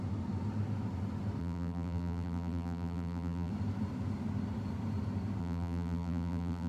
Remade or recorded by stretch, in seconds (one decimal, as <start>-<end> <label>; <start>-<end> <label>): 0.0-1.4 recorded; 1.4-3.5 remade; 3.5-5.4 recorded; 5.4-6.7 remade